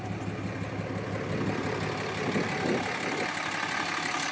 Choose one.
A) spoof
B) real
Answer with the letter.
B